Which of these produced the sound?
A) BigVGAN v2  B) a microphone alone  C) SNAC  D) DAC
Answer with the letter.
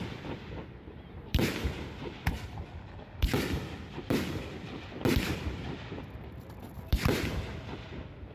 A